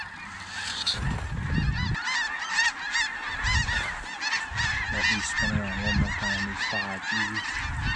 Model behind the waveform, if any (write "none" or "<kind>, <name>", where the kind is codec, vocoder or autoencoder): none